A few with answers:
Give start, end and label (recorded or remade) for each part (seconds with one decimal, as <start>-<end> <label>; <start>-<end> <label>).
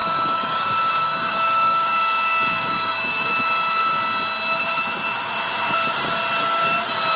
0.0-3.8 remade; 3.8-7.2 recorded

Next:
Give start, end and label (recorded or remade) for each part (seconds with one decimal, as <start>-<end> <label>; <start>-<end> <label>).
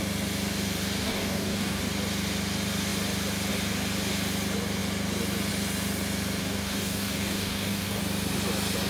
0.0-1.0 recorded; 1.0-1.8 remade; 1.8-6.4 recorded; 6.4-8.0 remade; 8.0-8.9 recorded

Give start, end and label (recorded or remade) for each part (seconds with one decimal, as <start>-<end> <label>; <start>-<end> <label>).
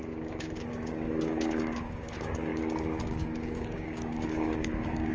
0.0-5.1 remade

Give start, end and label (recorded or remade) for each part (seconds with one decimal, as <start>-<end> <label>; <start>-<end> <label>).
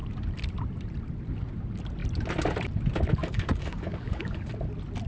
0.0-3.2 recorded; 3.2-4.5 remade; 4.5-5.1 recorded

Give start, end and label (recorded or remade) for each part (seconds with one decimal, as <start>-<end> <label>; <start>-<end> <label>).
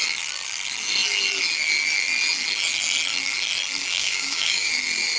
0.0-3.9 recorded; 3.9-4.7 remade; 4.7-5.2 recorded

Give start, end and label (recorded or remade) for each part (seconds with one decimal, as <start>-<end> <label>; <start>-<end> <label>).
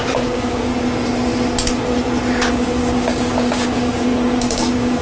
0.0-0.7 remade; 0.7-2.5 recorded; 2.5-5.0 remade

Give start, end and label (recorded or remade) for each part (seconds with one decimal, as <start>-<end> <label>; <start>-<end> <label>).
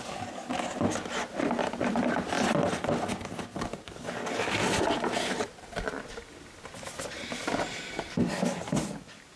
0.0-0.5 remade; 0.5-3.6 recorded; 3.6-4.6 remade; 4.6-8.3 recorded; 8.3-9.4 remade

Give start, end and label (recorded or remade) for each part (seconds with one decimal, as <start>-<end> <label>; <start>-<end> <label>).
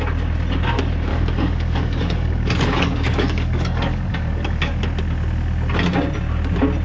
0.0-1.1 recorded; 1.1-4.8 remade; 4.8-6.8 recorded